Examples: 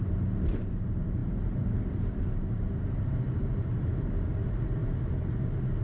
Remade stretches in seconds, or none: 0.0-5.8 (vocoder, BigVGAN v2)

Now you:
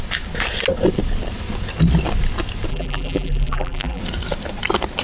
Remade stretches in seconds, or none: 2.7-4.0 (vocoder, BigVGAN v2)